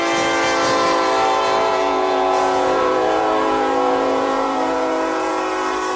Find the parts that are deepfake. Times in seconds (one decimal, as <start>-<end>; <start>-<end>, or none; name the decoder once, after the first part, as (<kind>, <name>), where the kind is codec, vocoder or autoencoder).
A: 1.7-5.3 (vocoder, Vocos)